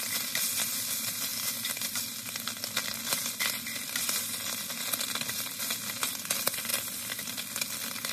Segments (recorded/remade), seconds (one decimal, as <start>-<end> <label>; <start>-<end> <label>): 0.0-8.1 recorded